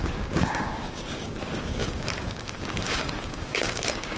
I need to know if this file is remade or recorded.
remade